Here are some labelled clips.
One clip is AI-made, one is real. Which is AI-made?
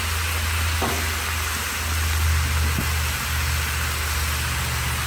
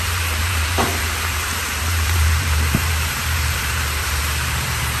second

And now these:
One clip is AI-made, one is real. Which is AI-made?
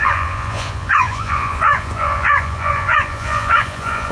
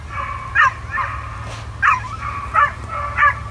first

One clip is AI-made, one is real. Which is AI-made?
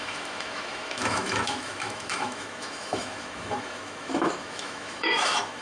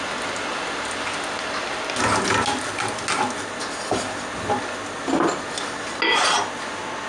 first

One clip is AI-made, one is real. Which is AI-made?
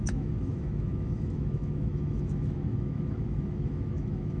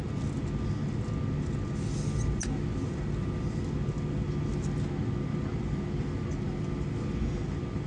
first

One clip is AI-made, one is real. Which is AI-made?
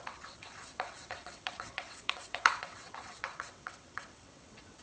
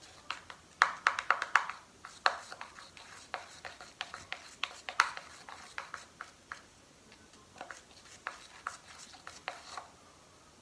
first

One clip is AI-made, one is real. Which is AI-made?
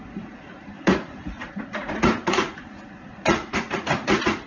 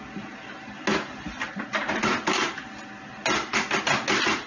first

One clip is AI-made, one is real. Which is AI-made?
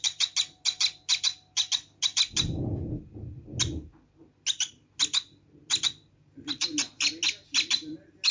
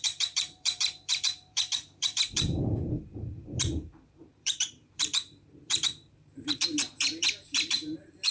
second